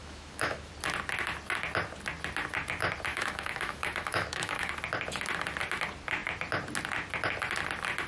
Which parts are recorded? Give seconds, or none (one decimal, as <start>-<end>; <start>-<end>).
0.7-3.1; 4.7-8.1

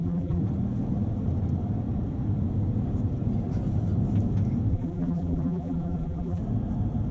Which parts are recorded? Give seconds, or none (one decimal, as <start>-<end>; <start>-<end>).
0.4-4.7; 6.4-7.1